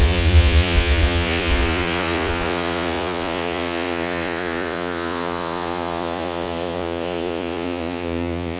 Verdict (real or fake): fake